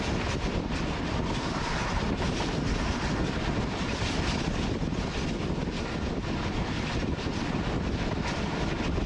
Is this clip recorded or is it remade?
recorded